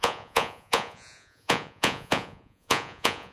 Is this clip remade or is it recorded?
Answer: remade